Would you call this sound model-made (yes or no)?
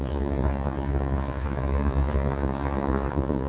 yes